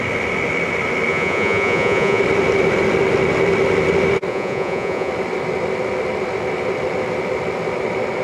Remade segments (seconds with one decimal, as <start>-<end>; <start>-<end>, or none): 1.1-2.2; 4.3-5.1